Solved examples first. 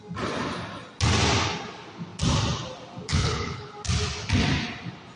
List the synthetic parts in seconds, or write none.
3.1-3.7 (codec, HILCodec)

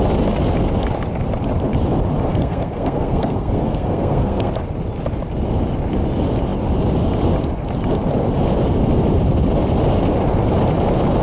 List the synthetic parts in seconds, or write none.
2.3-4.5 (codec, SNAC)

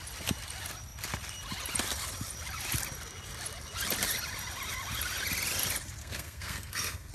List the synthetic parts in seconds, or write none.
6.0-7.1 (codec, SNAC)

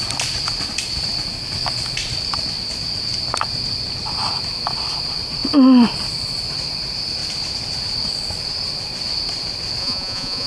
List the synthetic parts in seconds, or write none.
9.8-10.5 (vocoder, Vocos)

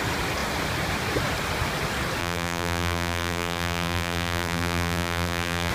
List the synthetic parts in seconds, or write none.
2.2-5.7 (vocoder, BigVGAN v2)